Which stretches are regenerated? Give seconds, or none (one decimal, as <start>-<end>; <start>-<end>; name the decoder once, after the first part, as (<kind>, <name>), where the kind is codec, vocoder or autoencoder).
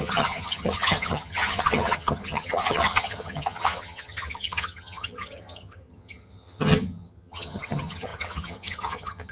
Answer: 0.0-9.3 (vocoder, HiFi-GAN)